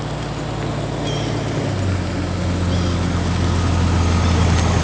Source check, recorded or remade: recorded